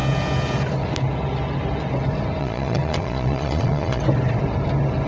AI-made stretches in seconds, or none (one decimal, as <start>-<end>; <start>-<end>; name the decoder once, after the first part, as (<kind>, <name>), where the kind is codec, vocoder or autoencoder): 2.4-4.0 (vocoder, Vocos)